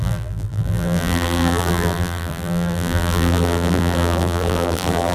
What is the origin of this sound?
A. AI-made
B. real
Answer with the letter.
A